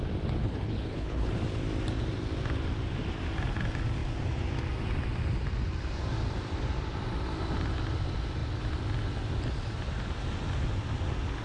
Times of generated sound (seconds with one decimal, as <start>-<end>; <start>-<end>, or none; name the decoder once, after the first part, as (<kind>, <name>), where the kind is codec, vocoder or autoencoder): 0.4-1.3 (codec, HILCodec)